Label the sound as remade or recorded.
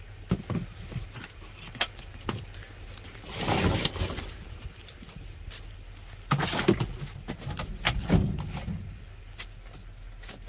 recorded